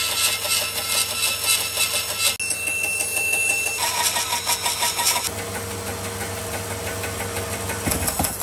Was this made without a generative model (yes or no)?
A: yes